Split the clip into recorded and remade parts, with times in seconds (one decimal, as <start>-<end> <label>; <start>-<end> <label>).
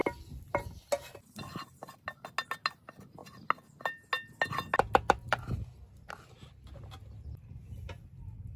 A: 0.0-8.6 recorded